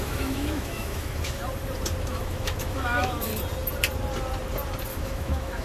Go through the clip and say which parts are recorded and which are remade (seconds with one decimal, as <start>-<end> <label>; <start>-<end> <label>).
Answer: 0.0-1.4 remade; 1.4-2.1 recorded; 2.1-3.3 remade; 3.3-4.9 recorded; 4.9-5.6 remade